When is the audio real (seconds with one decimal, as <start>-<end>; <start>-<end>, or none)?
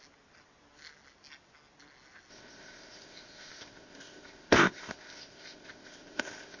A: 0.0-2.3